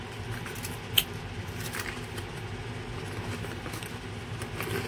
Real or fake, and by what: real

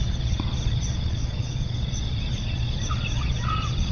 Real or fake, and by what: fake, vocoder, Vocos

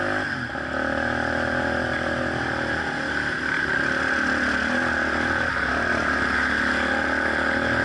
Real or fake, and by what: real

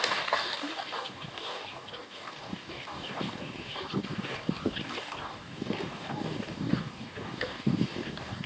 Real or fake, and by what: fake, codec, DAC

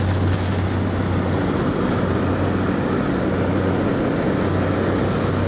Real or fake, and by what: real